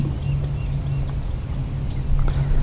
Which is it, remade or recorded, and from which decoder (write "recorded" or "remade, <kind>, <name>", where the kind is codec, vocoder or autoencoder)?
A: recorded